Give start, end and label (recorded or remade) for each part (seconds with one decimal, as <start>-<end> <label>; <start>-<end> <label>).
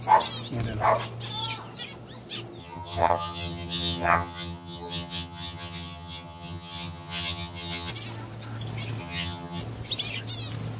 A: 0.0-2.6 recorded; 2.6-7.9 remade; 7.9-9.0 recorded; 9.0-9.6 remade; 9.6-10.8 recorded